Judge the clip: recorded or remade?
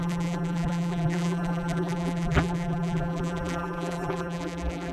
remade